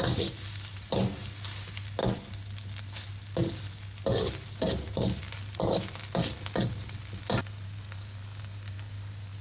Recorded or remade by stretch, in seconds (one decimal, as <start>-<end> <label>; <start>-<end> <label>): 0.0-9.4 recorded